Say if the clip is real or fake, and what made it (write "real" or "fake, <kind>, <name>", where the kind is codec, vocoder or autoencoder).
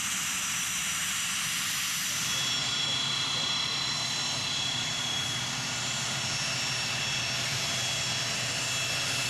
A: real